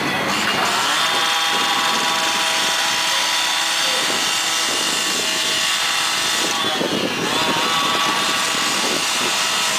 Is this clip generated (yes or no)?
no